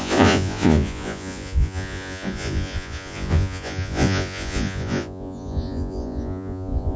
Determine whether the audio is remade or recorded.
remade